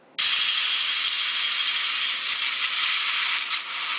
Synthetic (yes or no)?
no